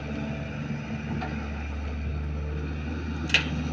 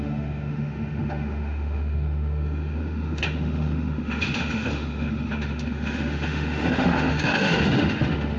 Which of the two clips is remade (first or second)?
second